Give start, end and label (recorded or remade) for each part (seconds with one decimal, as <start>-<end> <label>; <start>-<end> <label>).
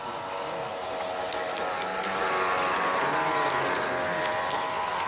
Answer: 0.0-5.1 recorded